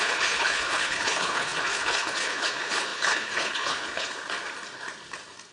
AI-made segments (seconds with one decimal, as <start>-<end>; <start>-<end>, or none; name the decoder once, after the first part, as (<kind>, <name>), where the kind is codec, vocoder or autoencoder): 0.0-4.1 (codec, HILCodec)